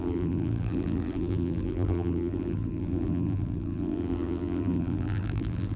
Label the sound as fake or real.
fake